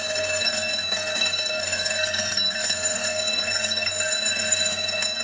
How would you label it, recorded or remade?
remade